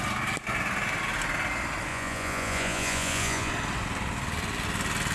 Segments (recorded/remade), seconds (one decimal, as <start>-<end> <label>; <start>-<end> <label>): 0.0-1.9 recorded; 1.9-3.5 remade; 3.5-5.1 recorded